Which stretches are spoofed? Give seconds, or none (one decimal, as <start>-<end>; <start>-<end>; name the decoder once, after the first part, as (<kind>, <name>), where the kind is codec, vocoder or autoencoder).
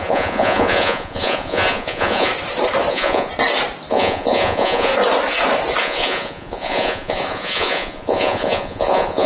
0.0-2.3 (vocoder, Vocos); 2.9-3.3; 3.9-4.9; 5.8-9.3